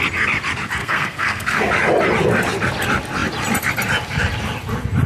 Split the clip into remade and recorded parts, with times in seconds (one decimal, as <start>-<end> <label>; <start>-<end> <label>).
0.0-0.8 recorded; 0.8-1.7 remade; 1.7-5.1 recorded